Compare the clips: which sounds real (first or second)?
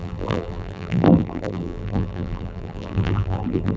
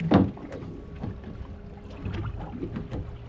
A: second